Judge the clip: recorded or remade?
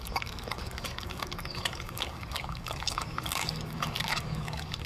remade